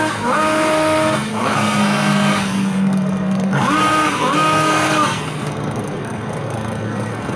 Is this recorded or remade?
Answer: remade